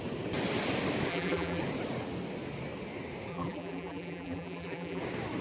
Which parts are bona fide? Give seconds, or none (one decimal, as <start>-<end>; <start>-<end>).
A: 0.0-1.1; 1.6-3.3; 5.0-5.4

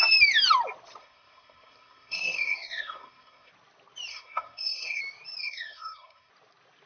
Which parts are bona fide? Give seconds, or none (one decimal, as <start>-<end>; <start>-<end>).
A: 0.0-1.0; 3.5-4.1; 5.0-5.4; 6.3-6.9